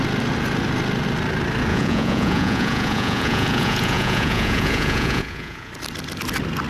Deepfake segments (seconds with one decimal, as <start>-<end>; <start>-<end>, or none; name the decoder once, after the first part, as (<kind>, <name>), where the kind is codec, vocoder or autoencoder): 1.7-5.7 (vocoder, Vocos)